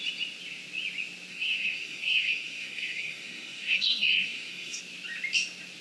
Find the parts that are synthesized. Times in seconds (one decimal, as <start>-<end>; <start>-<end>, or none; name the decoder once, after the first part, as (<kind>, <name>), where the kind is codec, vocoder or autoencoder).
1.3-4.8 (codec, SNAC)

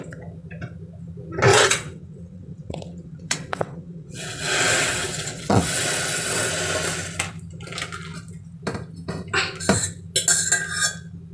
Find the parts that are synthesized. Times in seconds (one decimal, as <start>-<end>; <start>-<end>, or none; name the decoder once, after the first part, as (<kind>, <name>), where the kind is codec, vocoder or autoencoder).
1.5-6.5 (vocoder, WaveNeXt)

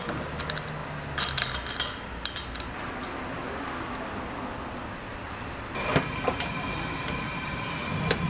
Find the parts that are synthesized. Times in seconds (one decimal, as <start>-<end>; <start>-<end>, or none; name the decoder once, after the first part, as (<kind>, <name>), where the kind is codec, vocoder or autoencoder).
none

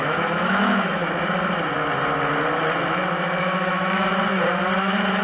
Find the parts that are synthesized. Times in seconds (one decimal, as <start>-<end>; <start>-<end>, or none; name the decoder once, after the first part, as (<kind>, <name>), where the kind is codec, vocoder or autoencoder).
0.0-1.0 (autoencoder, DAC-VAE); 3.4-4.1

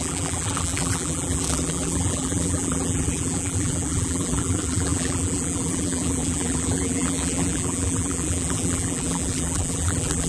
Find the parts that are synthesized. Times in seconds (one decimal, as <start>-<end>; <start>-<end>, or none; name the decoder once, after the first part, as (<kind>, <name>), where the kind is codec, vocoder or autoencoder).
0.0-10.3 (vocoder, BigVGAN v2)